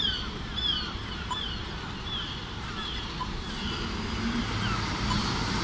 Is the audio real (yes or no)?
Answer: no